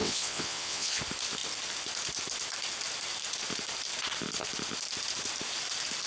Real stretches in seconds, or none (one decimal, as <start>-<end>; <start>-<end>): 1.0-6.1